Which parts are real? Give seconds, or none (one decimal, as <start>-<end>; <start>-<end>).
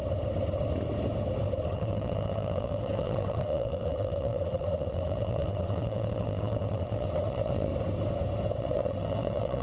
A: 0.0-1.7; 7.7-8.6